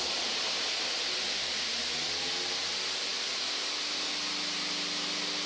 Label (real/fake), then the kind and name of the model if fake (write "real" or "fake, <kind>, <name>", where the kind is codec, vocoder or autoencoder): real